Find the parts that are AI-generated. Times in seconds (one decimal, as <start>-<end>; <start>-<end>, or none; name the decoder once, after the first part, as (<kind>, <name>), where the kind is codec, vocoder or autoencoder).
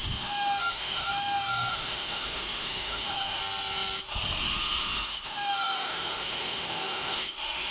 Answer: 0.0-3.4 (autoencoder, DAC-VAE); 4.4-7.7